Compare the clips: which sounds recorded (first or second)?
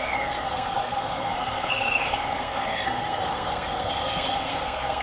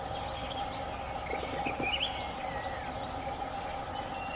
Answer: second